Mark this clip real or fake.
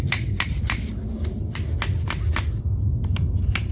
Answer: real